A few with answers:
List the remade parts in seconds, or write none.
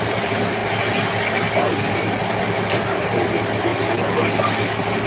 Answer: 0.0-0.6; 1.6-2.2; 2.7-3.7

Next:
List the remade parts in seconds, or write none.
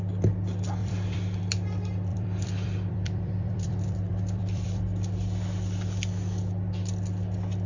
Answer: 0.8-1.4; 2.1-4.8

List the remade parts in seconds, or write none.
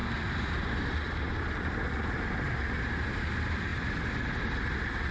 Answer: none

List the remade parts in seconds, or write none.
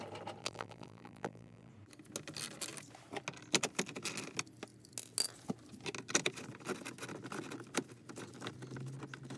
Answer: 0.4-1.7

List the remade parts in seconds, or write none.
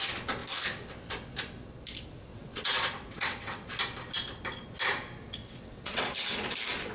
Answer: 2.3-3.7; 5.4-6.4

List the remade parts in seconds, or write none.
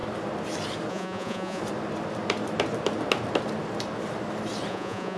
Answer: 0.9-1.6; 4.7-5.2